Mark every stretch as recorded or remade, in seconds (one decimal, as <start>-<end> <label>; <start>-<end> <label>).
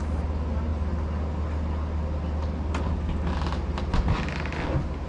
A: 0.0-5.1 recorded